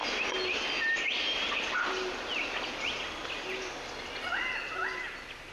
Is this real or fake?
real